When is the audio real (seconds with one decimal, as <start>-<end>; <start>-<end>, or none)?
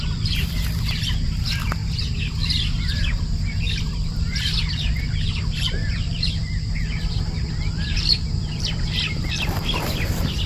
1.8-3.8